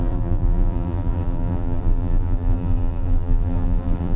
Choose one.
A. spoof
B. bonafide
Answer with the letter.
A